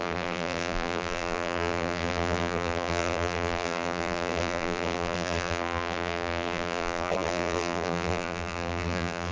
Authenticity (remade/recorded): remade